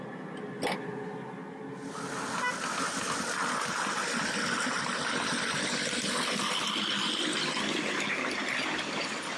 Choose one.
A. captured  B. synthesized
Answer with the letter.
A